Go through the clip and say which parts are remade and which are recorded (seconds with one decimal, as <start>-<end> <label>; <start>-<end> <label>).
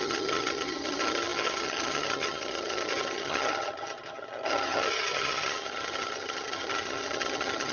0.0-7.7 remade